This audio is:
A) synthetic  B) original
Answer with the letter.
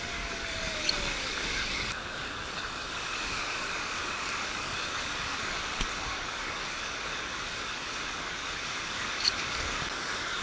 A